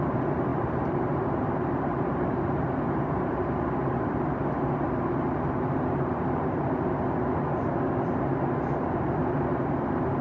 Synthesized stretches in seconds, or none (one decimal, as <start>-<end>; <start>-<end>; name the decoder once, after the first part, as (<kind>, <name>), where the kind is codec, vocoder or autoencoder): 0.5-4.0 (vocoder, BigVGAN v2)